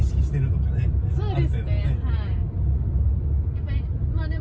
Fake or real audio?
real